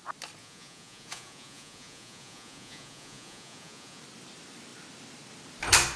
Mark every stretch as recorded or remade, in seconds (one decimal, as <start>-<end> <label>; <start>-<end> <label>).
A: 0.0-0.4 recorded; 0.4-4.0 remade; 4.0-6.0 recorded